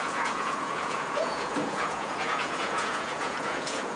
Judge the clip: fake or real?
fake